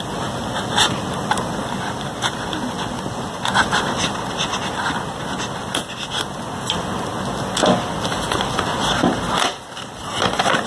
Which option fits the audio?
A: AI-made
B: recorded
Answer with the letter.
B